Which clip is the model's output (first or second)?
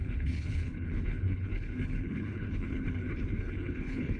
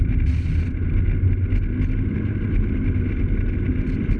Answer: first